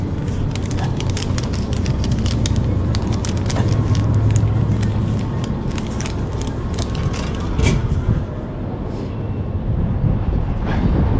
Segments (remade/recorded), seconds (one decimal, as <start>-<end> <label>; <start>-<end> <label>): 0.0-11.2 recorded